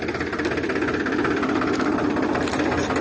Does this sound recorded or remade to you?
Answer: recorded